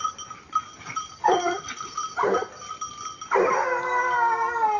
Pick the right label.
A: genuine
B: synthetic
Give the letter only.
A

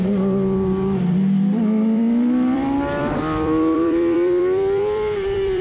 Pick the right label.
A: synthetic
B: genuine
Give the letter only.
A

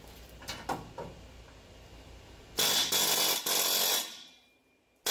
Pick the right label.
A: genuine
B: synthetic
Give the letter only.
A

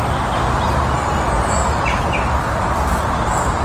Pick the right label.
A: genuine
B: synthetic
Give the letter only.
A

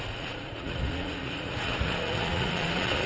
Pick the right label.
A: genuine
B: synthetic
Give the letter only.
B